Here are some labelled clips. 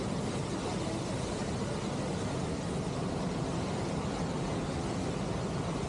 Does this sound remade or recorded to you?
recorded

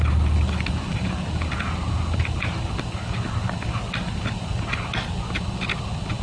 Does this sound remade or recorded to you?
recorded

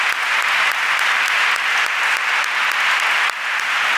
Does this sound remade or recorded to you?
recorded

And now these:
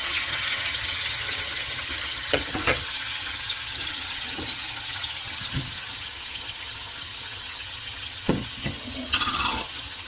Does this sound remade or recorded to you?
remade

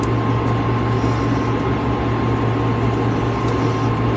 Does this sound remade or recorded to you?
recorded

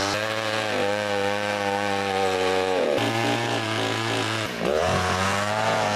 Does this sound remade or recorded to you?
remade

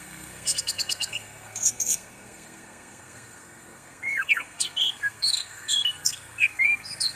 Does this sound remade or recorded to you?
remade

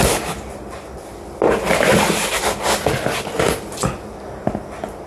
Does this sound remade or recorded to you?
recorded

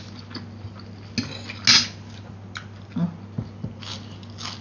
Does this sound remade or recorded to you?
recorded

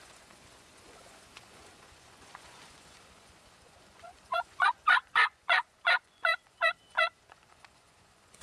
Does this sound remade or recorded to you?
remade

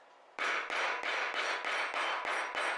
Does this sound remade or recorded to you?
recorded